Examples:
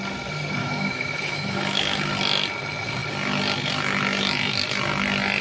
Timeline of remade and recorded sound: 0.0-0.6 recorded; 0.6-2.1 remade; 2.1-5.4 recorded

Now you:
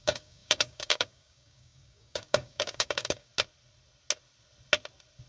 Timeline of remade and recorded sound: 0.0-3.3 remade; 3.3-5.3 recorded

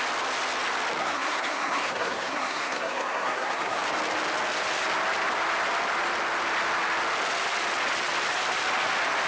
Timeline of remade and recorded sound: 0.0-1.0 recorded; 1.0-3.8 remade; 3.8-9.3 recorded

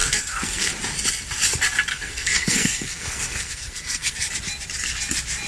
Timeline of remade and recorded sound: 0.0-0.7 remade; 0.7-1.9 recorded; 1.9-4.3 remade; 4.3-5.5 recorded

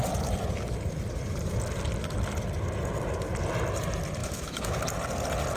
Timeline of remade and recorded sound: 0.0-4.2 recorded; 4.2-4.8 remade; 4.8-5.6 recorded

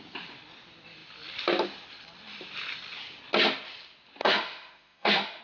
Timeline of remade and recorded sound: 0.0-4.2 recorded; 4.2-5.4 remade

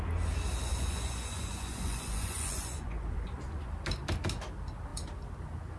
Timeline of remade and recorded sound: 0.0-0.7 recorded; 0.7-3.7 remade; 3.7-5.8 recorded

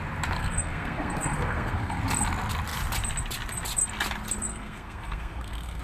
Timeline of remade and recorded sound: 0.0-0.4 recorded; 0.4-2.0 remade; 2.0-4.5 recorded; 4.5-5.8 remade